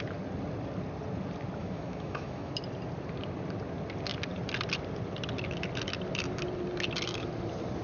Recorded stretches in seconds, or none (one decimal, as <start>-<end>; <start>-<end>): 0.0-1.6; 2.5-7.8